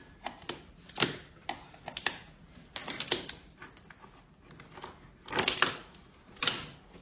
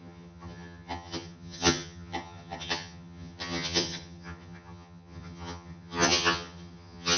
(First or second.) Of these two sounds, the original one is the first